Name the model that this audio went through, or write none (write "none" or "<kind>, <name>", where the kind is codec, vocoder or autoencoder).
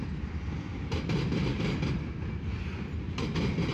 none